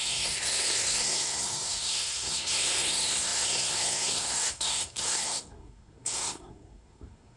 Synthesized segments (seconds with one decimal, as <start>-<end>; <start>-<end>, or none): 0.0-7.4